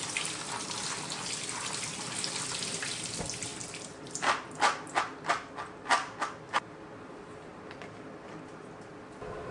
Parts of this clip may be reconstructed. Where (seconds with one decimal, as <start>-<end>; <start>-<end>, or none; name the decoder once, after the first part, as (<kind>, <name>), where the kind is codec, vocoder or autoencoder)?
none